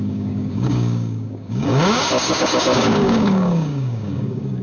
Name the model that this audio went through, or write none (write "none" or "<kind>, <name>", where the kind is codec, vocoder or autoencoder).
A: codec, DAC